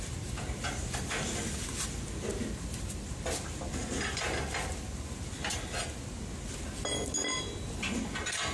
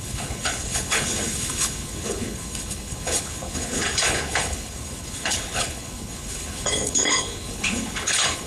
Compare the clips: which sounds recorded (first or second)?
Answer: first